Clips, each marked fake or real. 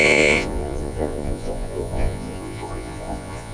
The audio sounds fake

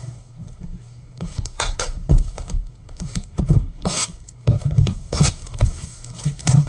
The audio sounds fake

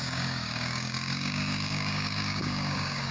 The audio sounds fake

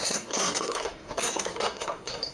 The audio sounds fake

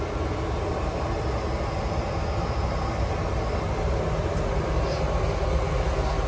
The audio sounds real